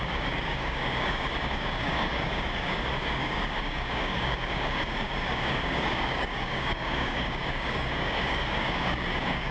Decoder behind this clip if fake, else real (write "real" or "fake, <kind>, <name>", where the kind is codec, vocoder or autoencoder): fake, codec, DAC